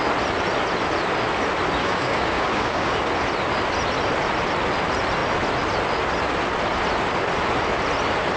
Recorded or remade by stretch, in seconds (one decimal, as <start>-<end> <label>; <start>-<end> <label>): 0.0-1.8 recorded; 1.8-3.1 remade; 3.1-8.4 recorded